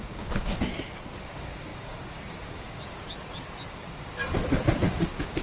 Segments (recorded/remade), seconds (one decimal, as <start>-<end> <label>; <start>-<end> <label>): 0.0-0.7 remade; 0.7-1.2 recorded; 1.2-3.0 remade; 3.0-3.7 recorded; 3.7-4.2 remade; 4.2-4.8 recorded; 4.8-5.4 remade